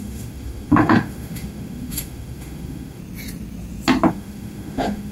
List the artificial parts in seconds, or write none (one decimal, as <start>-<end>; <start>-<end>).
0.0-3.0; 4.1-5.1